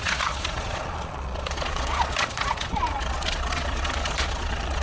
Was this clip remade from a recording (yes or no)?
yes